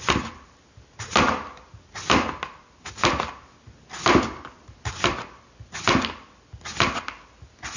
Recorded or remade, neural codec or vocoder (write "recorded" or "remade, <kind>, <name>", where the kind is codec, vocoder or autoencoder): recorded